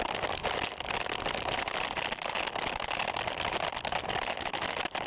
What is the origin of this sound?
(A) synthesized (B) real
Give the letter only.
B